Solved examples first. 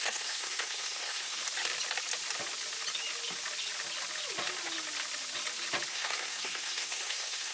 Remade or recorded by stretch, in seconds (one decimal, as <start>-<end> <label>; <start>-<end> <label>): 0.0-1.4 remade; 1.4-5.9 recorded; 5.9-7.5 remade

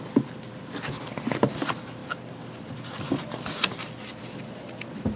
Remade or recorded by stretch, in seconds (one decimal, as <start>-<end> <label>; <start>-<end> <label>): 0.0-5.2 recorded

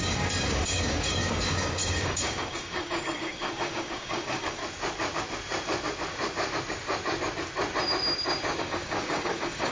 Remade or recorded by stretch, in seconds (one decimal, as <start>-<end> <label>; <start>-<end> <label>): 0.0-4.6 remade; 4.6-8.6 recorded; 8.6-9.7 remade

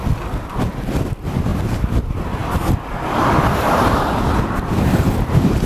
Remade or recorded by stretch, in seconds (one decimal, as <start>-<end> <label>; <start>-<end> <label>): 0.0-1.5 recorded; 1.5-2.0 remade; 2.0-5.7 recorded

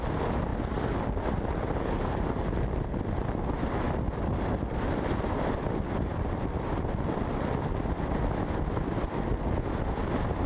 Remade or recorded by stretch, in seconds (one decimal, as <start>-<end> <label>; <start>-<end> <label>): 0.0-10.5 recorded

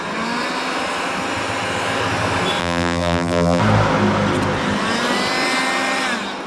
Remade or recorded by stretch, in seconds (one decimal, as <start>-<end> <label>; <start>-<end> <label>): 0.0-2.6 recorded; 2.6-3.6 remade; 3.6-6.5 recorded

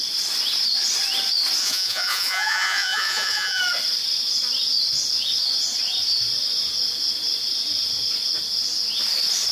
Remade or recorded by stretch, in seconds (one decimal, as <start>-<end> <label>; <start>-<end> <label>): 0.0-1.6 recorded; 1.6-3.6 remade; 3.6-9.5 recorded